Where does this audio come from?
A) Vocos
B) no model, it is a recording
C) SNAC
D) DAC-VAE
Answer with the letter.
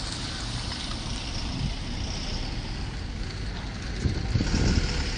B